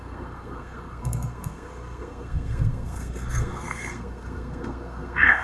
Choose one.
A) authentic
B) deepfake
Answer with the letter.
B